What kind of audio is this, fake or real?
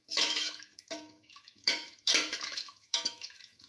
fake